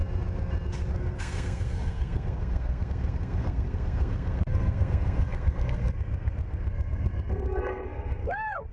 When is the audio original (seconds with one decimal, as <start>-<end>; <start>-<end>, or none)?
0.0-0.9